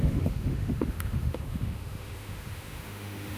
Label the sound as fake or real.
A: fake